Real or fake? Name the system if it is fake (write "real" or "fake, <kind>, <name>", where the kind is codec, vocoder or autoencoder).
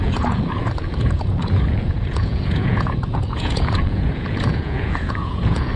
fake, vocoder, Vocos